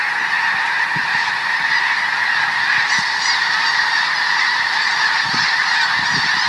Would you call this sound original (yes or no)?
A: yes